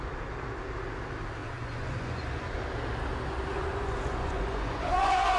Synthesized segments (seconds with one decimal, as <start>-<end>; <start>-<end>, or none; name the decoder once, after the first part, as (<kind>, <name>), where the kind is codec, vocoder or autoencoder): 1.4-2.6 (vocoder, Vocos); 3.5-5.4